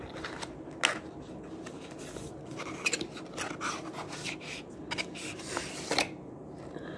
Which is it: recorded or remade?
recorded